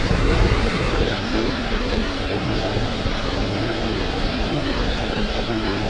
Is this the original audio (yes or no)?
no